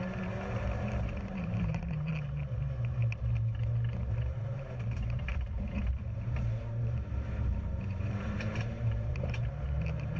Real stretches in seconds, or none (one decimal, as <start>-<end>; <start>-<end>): 2.1-4.1